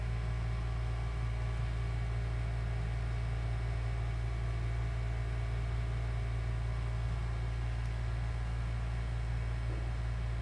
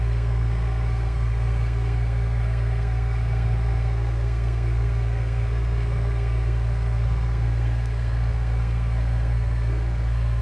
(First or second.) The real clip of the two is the first